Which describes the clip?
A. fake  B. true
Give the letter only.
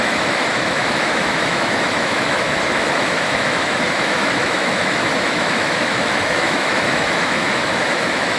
A